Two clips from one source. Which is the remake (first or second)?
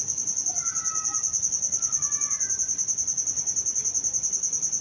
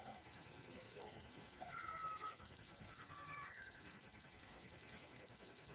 second